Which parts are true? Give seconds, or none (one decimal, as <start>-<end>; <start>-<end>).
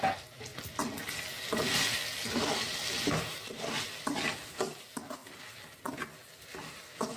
0.0-7.2